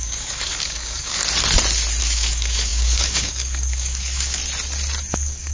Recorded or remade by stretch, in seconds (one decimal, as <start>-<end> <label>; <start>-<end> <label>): 0.0-1.2 remade; 1.2-2.0 recorded; 2.0-4.4 remade; 4.4-5.1 recorded; 5.1-5.5 remade

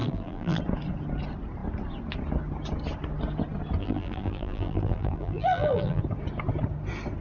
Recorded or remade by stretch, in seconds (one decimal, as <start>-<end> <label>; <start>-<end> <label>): 0.0-0.6 remade; 0.6-3.8 recorded; 3.8-6.0 remade; 6.0-7.2 recorded

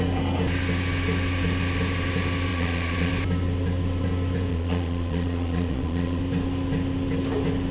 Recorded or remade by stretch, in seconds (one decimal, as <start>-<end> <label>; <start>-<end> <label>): 0.0-2.5 recorded; 2.5-3.1 remade; 3.1-4.5 recorded; 4.5-6.2 remade; 6.2-7.7 recorded

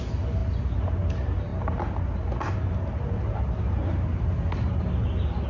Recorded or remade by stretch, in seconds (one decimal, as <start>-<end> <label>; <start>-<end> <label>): 0.0-5.5 recorded

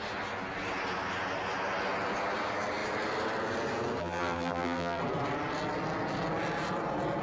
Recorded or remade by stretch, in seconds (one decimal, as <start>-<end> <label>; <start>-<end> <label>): 0.0-4.0 recorded; 4.0-5.0 remade; 5.0-7.2 recorded